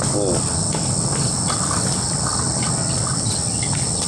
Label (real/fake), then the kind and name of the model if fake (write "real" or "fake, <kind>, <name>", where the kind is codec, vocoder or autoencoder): real